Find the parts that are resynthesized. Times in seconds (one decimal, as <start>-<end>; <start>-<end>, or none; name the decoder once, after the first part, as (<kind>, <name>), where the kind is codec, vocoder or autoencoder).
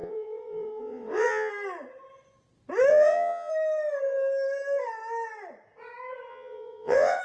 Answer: 0.0-1.5 (vocoder, WaveNeXt); 2.9-3.5; 6.3-7.2